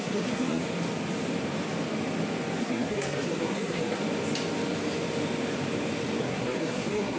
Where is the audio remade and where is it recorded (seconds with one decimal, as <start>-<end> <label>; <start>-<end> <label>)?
0.0-0.6 remade; 0.6-2.6 recorded; 2.6-4.0 remade; 4.0-6.2 recorded; 6.2-7.2 remade